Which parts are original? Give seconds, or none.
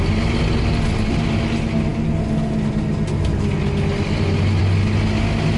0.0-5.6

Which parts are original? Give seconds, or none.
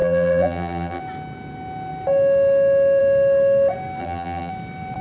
1.0-4.0; 4.5-5.0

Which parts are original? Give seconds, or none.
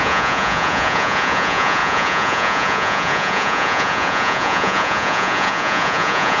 none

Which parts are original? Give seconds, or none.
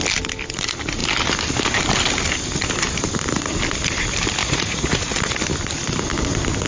0.0-4.4; 5.4-6.7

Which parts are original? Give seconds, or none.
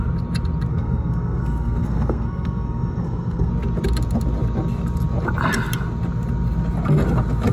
0.0-0.7; 3.5-7.5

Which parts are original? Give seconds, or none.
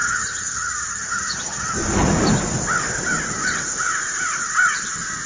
1.8-5.3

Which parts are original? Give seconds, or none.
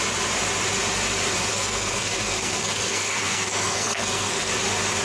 0.0-1.5; 4.5-5.0